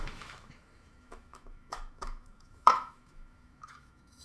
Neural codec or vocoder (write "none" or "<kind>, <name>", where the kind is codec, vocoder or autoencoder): autoencoder, DAC-VAE